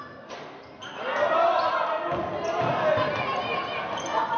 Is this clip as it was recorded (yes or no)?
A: yes